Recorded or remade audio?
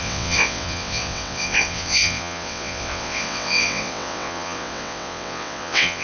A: remade